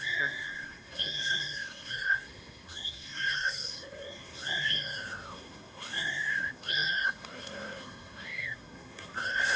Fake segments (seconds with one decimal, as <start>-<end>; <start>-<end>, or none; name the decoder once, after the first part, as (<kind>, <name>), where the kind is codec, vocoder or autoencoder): 0.0-9.6 (codec, SNAC)